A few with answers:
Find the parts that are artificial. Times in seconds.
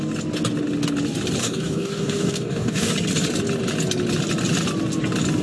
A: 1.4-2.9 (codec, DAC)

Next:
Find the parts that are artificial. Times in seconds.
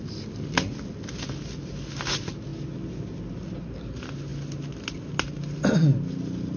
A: none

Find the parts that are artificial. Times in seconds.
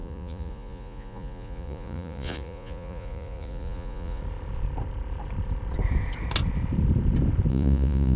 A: 0.0-4.2 (vocoder, Vocos); 7.5-8.2